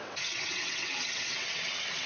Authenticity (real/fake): fake